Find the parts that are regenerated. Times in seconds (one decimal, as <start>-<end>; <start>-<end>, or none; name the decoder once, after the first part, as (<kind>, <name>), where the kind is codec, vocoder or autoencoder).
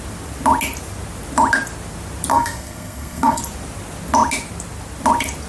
2.3-3.4 (codec, SNAC)